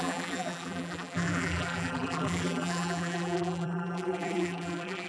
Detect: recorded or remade remade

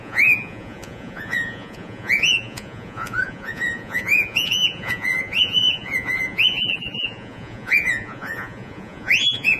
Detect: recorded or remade remade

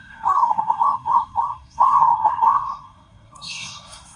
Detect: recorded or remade remade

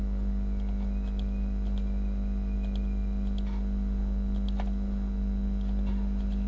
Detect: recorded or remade recorded